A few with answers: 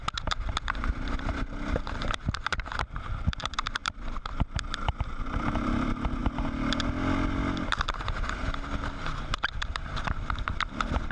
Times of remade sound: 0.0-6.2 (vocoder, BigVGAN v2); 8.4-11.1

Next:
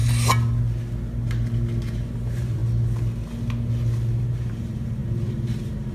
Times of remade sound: 1.9-2.6 (vocoder, BigVGAN v2); 4.2-5.9

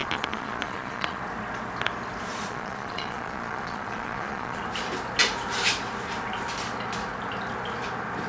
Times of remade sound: 0.0-1.2 (vocoder, Vocos); 2.3-4.6

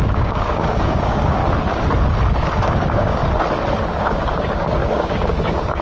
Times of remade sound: 0.0-1.4 (codec, DAC); 2.4-3.2; 4.0-5.8

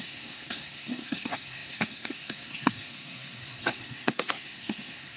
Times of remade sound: 0.0-5.2 (codec, SNAC)